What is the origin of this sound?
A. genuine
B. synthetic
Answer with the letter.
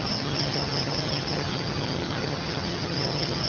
B